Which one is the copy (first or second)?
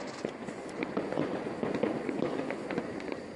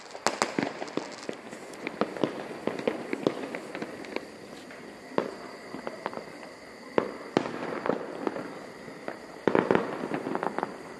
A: first